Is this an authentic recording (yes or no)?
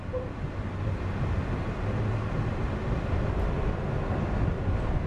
yes